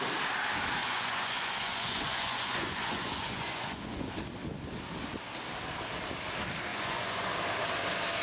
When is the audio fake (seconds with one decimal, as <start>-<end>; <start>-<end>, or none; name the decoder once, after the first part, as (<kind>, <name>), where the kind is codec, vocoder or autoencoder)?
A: 0.8-4.1 (vocoder, Vocos); 6.7-7.3